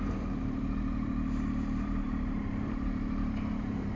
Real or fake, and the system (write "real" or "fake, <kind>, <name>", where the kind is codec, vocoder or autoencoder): fake, vocoder, BigVGAN v2